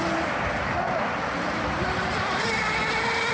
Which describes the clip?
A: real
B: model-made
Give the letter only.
A